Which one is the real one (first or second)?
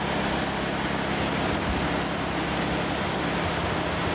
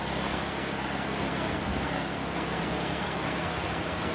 first